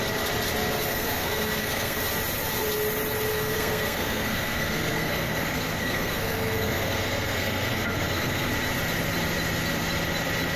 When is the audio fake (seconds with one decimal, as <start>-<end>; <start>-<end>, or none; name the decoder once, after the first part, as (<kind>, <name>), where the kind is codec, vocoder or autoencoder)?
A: 0.9-2.0 (codec, SNAC); 3.3-8.5